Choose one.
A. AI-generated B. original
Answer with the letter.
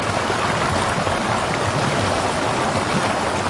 B